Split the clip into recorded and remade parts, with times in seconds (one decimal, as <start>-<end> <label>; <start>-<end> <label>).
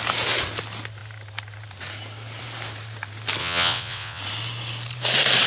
0.0-3.4 recorded; 3.4-4.2 remade; 4.2-5.5 recorded